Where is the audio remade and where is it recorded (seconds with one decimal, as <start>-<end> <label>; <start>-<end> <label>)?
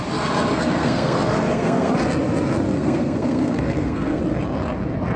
0.0-0.5 recorded; 0.5-1.9 remade; 1.9-2.7 recorded; 2.7-4.2 remade; 4.2-5.2 recorded